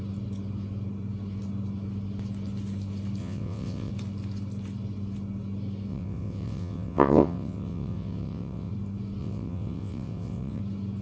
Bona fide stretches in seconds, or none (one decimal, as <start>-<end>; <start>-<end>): 0.0-3.2; 3.9-5.9; 8.7-9.2; 10.6-11.0